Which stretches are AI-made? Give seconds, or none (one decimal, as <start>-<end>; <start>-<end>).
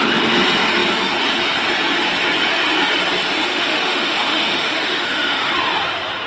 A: 3.5-5.5